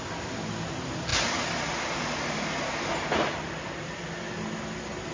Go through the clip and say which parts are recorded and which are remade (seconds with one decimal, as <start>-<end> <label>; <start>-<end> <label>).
0.0-5.1 recorded